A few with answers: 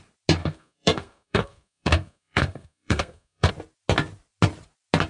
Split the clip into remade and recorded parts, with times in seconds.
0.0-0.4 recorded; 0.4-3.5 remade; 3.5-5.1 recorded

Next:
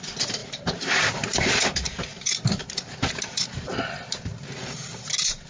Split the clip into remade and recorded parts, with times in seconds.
0.0-0.4 recorded; 0.4-1.5 remade; 1.5-2.1 recorded; 2.1-2.6 remade; 2.6-5.5 recorded